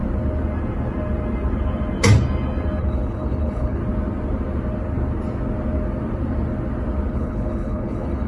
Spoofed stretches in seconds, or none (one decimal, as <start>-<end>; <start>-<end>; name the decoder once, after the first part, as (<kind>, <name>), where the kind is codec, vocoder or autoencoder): 2.8-3.8 (codec, HILCodec); 7.1-8.3